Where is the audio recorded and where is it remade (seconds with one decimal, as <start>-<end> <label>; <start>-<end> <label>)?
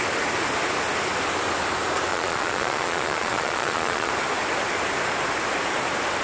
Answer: 0.0-2.1 recorded; 2.1-4.1 remade; 4.1-6.2 recorded